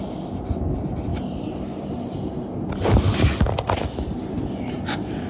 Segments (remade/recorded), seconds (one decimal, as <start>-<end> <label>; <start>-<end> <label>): 0.0-5.3 recorded